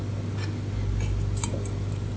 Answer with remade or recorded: recorded